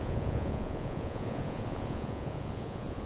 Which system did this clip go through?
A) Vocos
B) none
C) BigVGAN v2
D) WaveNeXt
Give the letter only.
A